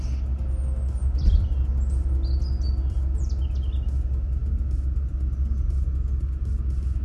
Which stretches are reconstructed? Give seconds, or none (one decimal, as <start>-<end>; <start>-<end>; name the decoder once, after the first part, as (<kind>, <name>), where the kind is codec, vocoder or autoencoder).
1.0-3.2 (vocoder, BigVGAN v2)